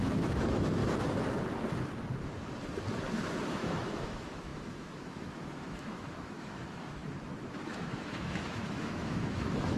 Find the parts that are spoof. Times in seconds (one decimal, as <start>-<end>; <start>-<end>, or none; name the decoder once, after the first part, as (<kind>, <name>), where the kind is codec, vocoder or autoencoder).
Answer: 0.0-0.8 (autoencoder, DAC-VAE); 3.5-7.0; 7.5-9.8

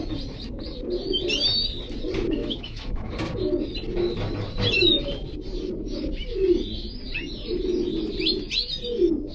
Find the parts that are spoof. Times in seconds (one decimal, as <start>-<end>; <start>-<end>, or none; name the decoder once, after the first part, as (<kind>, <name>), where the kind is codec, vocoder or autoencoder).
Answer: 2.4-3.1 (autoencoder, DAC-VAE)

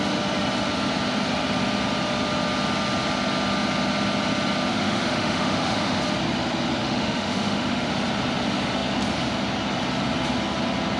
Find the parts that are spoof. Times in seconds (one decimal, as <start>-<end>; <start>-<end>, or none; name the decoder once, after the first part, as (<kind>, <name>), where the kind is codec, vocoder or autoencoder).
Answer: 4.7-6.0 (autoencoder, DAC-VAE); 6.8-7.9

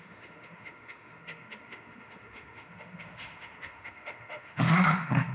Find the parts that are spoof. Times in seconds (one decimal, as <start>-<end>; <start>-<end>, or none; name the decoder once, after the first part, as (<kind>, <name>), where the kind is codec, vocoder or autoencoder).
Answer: 0.0-5.3 (autoencoder, DAC-VAE)